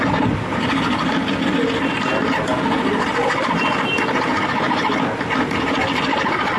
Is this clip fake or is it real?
real